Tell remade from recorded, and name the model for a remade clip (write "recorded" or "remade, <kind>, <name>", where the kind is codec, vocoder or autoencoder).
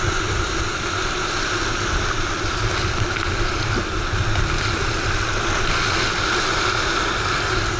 recorded